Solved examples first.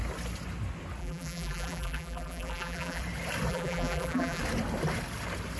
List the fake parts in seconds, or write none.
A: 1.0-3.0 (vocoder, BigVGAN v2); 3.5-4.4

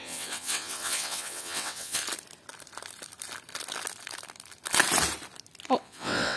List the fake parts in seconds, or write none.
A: 0.0-2.0 (vocoder, WaveNeXt); 5.8-6.4

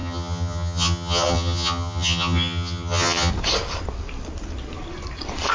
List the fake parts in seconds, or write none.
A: 0.0-3.3 (vocoder, HiFi-GAN)

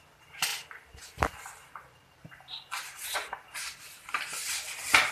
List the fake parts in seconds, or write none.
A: none

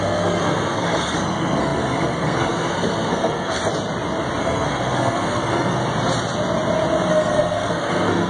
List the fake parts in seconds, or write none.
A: 0.0-3.6 (codec, SNAC); 4.4-5.8; 7.1-8.3

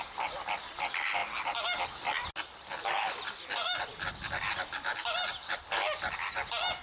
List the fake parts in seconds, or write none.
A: none

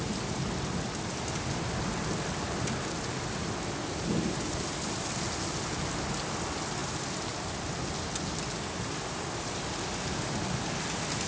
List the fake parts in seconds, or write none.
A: none

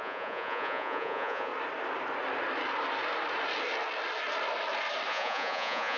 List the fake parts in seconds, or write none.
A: 0.0-1.5 (vocoder, Vocos); 5.1-6.0